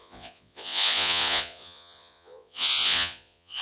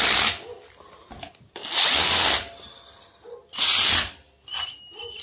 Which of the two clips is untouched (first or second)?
second